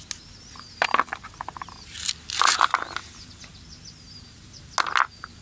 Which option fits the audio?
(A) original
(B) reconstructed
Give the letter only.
A